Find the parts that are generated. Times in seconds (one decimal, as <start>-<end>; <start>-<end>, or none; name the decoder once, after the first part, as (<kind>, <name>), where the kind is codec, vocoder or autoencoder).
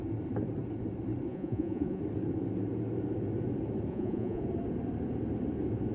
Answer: 1.3-2.0 (vocoder, Vocos); 3.9-4.4